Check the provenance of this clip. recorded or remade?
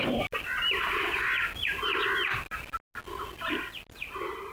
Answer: recorded